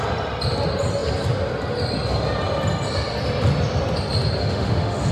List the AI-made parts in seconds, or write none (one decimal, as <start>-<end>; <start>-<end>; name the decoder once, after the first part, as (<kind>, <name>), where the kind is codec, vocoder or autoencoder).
4.4-5.1 (autoencoder, DAC-VAE)